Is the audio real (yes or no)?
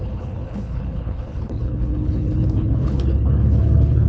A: no